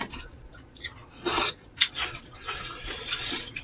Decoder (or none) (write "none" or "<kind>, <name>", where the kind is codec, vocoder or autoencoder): vocoder, Vocos